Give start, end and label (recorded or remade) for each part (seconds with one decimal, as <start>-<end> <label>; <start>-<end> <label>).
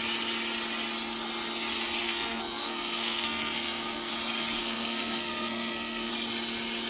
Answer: 0.0-2.0 recorded; 2.0-4.1 remade; 4.1-4.6 recorded; 4.6-6.1 remade; 6.1-6.9 recorded